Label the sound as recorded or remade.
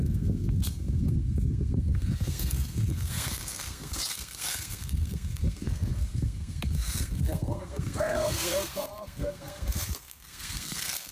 remade